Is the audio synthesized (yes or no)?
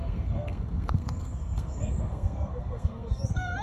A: yes